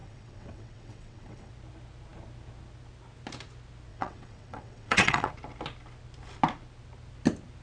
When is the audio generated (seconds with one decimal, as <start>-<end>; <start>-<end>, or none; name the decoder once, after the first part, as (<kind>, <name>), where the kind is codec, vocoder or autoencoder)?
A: 0.0-1.5 (vocoder, WaveNeXt); 3.9-5.3